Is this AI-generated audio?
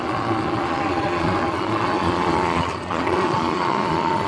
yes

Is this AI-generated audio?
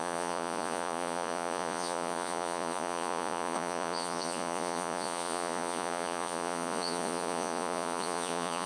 yes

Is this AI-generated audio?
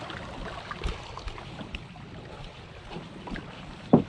no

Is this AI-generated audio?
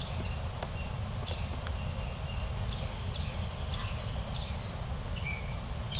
no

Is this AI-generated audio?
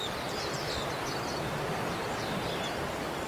yes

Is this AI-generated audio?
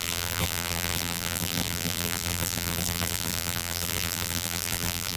yes